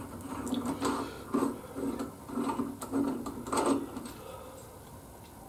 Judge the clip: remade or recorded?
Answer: recorded